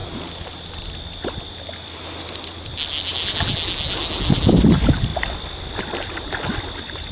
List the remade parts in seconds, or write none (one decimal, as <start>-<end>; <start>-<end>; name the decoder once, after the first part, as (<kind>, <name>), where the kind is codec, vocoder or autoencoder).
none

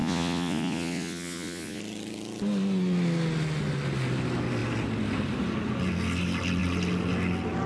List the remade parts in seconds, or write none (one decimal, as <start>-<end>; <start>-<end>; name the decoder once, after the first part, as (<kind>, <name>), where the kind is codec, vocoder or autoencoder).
0.0-1.8 (vocoder, Vocos)

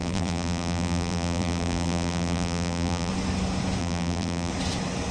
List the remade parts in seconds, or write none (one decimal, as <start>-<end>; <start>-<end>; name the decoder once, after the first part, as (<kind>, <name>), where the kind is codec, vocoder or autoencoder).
0.0-3.1 (vocoder, BigVGAN v2); 3.8-4.5